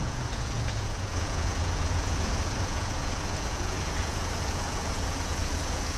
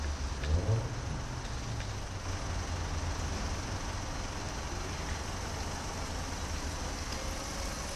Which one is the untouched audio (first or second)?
second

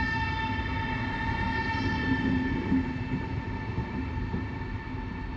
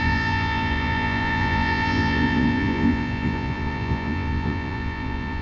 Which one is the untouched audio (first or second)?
first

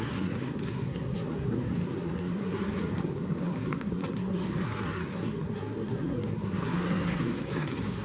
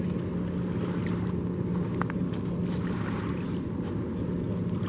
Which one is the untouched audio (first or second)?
second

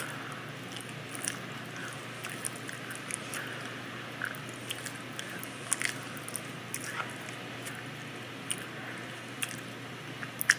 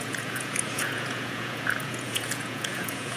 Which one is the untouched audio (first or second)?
first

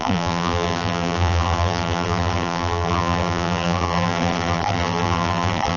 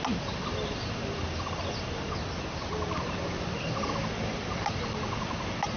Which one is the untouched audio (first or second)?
second